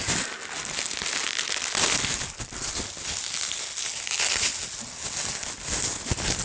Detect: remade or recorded recorded